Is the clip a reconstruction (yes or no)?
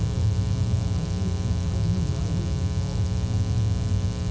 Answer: no